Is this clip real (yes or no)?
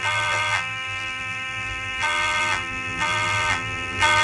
no